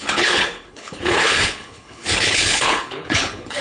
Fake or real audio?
fake